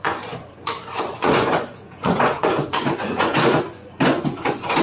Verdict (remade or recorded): remade